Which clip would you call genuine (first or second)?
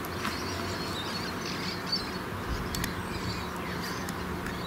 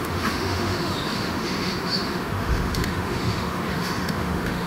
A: first